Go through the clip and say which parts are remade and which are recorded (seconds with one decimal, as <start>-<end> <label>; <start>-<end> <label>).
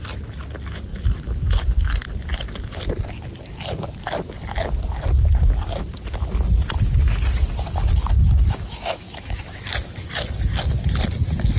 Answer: 0.0-8.2 recorded; 8.2-9.6 remade; 9.6-11.6 recorded